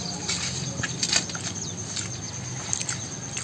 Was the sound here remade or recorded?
recorded